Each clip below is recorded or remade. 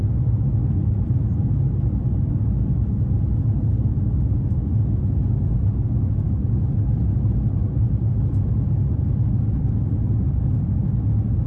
recorded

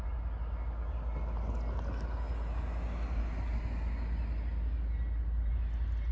recorded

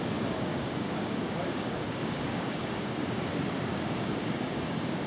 remade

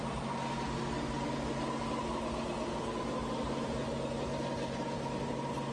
recorded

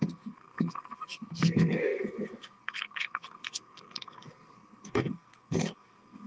remade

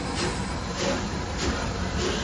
remade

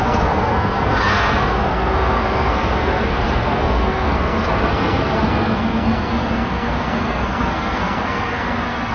remade